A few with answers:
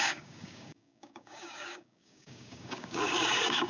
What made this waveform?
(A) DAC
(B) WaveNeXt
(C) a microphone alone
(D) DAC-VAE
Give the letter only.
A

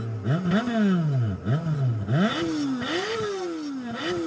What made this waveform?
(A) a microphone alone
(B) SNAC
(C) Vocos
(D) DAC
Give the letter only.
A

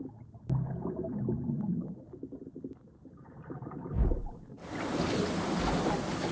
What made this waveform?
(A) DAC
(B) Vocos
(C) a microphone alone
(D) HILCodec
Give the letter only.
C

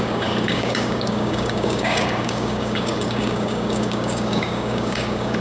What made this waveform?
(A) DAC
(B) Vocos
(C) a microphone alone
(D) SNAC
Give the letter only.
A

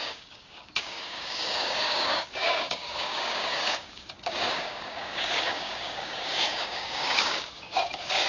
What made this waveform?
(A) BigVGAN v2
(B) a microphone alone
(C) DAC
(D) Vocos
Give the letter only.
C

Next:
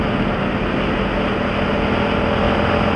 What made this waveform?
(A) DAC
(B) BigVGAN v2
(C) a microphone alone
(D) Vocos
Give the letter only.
C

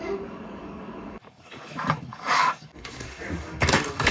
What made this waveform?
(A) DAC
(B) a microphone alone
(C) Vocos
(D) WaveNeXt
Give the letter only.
A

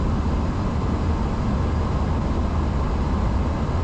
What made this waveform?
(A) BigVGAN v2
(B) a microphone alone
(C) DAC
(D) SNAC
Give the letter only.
B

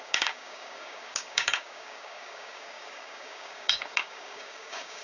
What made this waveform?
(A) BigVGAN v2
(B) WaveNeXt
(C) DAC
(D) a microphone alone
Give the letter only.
C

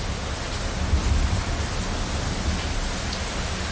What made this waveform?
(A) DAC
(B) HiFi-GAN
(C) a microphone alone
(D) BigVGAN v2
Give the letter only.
C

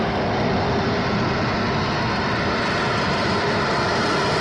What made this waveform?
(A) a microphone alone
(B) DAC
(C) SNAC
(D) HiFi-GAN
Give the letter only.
A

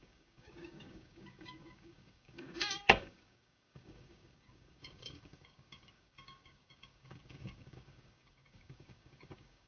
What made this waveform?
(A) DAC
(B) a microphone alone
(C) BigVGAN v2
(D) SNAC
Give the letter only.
A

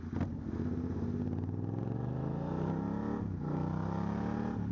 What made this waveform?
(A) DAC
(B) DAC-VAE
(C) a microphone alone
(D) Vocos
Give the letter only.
C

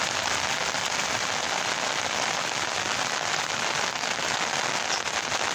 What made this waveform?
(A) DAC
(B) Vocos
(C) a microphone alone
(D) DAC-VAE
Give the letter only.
C